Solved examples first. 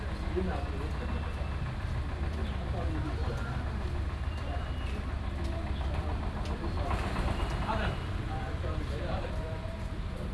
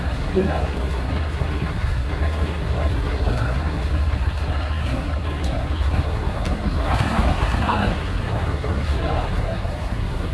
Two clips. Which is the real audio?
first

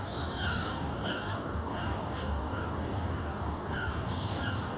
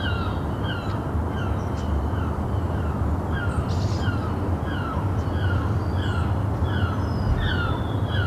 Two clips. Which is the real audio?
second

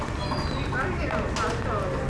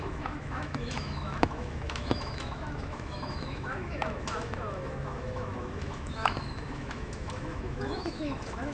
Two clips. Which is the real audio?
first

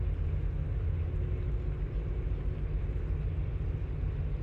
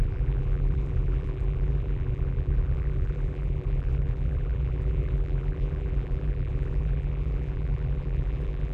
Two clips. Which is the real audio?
first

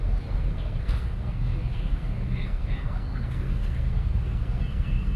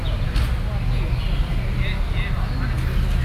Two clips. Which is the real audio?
second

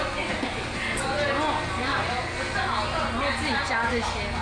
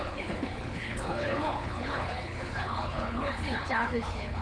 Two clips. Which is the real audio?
first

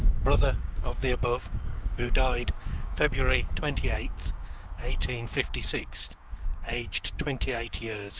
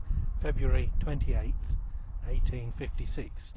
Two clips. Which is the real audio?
second